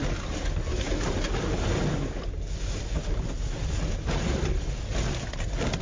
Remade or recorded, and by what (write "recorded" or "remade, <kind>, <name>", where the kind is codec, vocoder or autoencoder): recorded